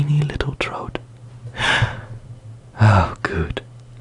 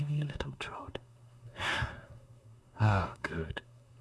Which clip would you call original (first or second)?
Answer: first